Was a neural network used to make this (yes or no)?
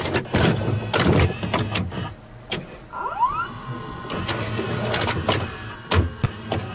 no